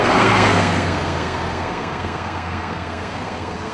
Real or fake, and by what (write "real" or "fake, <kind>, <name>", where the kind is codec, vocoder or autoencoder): fake, codec, SNAC